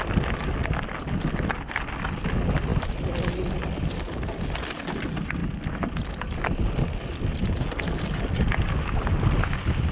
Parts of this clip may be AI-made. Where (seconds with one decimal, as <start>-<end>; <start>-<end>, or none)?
none